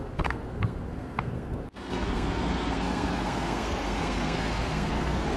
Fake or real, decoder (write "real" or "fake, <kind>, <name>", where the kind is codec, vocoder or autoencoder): fake, codec, SNAC